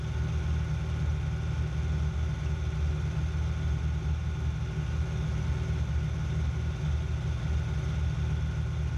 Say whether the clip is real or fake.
real